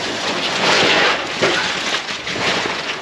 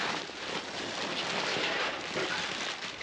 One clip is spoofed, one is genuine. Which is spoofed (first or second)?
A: first